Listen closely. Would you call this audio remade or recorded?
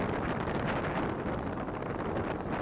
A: recorded